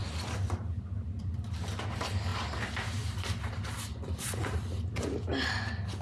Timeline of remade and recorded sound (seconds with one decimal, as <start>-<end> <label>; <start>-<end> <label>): 0.0-2.3 recorded; 2.3-5.0 remade; 5.0-6.0 recorded